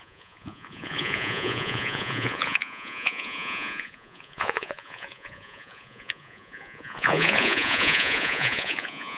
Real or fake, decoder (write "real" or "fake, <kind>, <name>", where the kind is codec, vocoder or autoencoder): fake, vocoder, Vocos